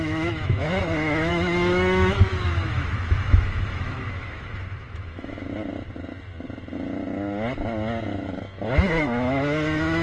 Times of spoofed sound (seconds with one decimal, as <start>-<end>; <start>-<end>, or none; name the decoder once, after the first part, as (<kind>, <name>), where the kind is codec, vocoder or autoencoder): 0.0-5.4 (autoencoder, DAC-VAE); 8.8-10.0